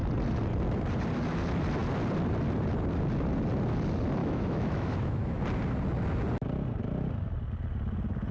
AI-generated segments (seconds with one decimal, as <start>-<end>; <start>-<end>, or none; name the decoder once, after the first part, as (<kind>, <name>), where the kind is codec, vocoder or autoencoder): 4.2-5.4 (autoencoder, DAC-VAE)